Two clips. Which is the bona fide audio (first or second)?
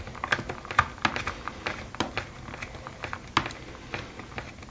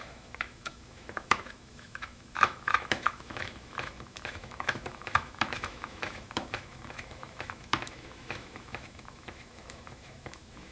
first